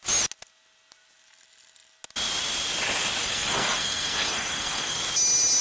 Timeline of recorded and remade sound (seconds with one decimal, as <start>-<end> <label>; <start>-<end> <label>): 0.0-3.2 recorded; 3.2-5.0 remade; 5.0-5.6 recorded